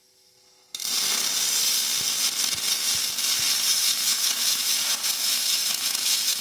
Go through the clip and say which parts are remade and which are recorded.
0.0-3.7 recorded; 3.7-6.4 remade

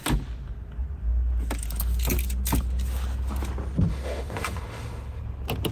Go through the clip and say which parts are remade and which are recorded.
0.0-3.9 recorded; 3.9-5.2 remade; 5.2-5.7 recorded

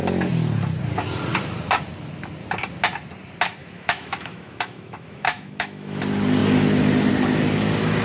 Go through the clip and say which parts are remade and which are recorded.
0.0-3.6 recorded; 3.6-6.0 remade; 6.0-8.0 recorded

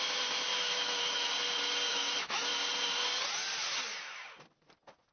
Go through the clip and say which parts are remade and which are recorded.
0.0-0.5 recorded; 0.5-1.3 remade; 1.3-1.9 recorded; 1.9-2.4 remade; 2.4-5.1 recorded

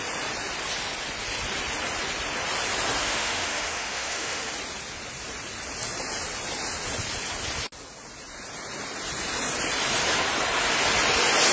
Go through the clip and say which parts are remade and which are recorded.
0.0-3.0 recorded; 3.0-4.5 remade; 4.5-11.5 recorded

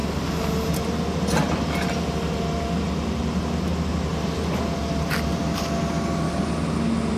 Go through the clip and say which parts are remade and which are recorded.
0.0-7.2 recorded

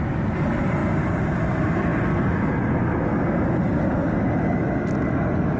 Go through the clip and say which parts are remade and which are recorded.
0.0-5.6 recorded